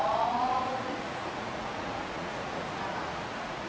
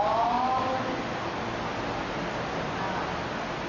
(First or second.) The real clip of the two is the second